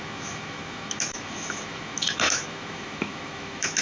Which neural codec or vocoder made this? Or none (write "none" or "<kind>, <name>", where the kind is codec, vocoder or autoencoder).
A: autoencoder, DAC-VAE